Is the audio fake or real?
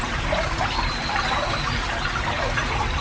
real